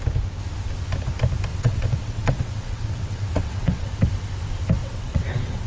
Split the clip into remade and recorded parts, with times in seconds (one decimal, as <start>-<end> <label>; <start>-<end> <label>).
0.0-1.5 recorded; 1.5-3.9 remade; 3.9-4.8 recorded; 4.8-5.7 remade